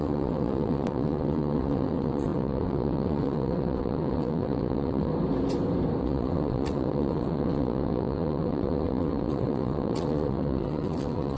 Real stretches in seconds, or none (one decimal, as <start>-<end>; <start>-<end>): 5.1-6.0

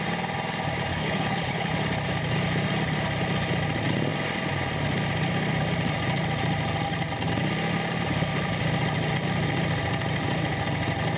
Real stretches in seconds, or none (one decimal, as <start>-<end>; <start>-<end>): 0.0-0.9; 1.7-11.2

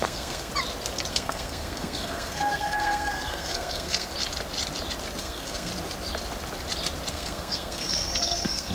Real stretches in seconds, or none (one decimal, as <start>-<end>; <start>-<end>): 0.5-1.1; 4.1-5.2; 5.7-7.1

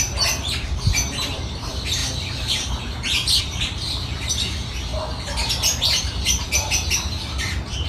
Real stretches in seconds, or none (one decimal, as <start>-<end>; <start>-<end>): 4.9-6.0

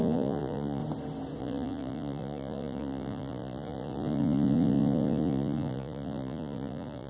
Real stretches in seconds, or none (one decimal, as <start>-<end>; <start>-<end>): 0.8-1.4

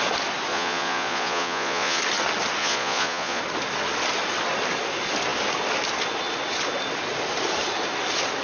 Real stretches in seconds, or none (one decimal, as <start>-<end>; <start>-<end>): 0.0-0.5; 2.0-2.6; 3.4-8.4